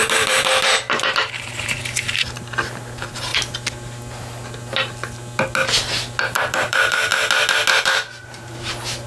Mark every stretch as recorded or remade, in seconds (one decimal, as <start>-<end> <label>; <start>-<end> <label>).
0.0-3.3 remade; 3.3-6.4 recorded; 6.4-7.1 remade; 7.1-7.8 recorded; 7.8-9.1 remade